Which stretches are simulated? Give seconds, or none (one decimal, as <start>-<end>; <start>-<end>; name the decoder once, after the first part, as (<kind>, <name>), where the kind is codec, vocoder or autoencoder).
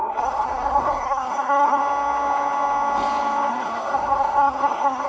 0.0-1.8 (codec, SNAC); 3.5-5.1